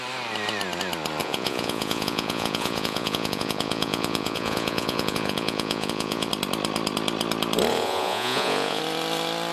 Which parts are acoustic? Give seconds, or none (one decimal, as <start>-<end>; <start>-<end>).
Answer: 0.0-1.2; 6.3-7.7; 8.8-9.5